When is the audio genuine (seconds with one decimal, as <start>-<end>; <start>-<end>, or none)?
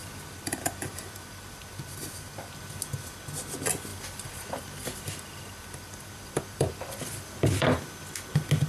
2.5-3.9; 7.8-8.7